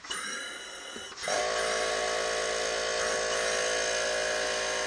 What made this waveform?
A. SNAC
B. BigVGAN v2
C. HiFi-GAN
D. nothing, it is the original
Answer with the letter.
D